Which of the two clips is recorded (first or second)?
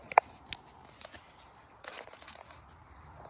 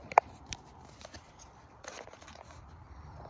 first